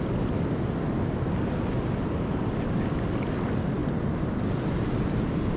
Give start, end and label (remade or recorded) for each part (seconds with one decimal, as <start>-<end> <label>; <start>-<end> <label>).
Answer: 0.0-5.6 recorded